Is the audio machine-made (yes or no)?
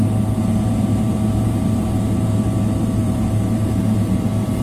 yes